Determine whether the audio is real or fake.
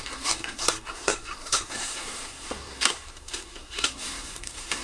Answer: fake